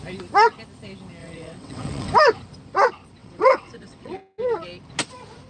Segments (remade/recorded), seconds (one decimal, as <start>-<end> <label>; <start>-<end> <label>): 0.0-1.2 recorded; 1.2-2.1 remade; 2.1-3.2 recorded; 3.2-4.2 remade; 4.2-5.5 recorded